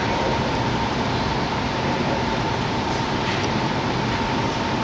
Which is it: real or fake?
real